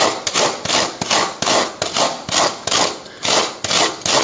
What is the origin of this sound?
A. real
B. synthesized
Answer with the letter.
A